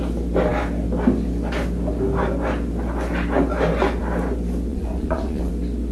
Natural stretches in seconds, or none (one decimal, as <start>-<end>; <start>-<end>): 0.0-4.7; 5.5-5.9